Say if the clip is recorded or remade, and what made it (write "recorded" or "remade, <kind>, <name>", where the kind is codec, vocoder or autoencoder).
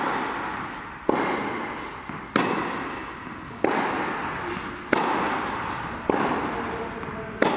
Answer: recorded